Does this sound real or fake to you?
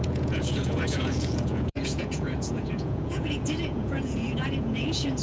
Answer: fake